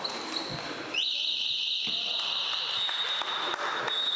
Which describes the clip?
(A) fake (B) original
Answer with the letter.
B